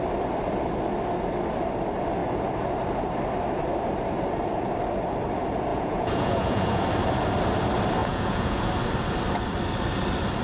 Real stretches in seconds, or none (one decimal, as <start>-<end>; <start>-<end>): 0.0-5.7; 6.8-8.0; 8.7-10.4